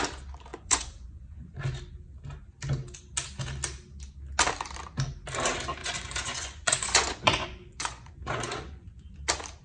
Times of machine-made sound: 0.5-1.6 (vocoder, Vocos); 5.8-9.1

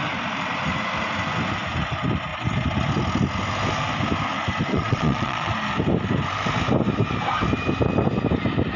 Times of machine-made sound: 4.7-5.5 (vocoder, Vocos)